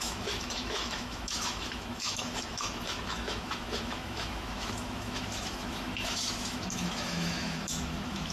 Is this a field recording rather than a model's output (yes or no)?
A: no